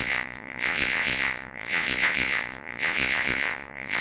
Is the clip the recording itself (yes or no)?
no